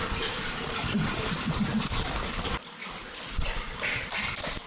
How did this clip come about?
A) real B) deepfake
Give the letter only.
B